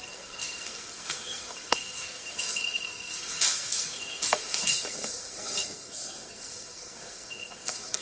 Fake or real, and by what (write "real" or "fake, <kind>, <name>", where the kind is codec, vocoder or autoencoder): fake, codec, SNAC